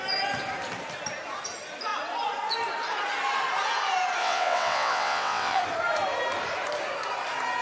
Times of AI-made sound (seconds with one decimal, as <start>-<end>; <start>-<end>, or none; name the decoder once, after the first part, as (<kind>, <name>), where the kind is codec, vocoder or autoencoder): 4.2-5.6 (vocoder, WaveNeXt)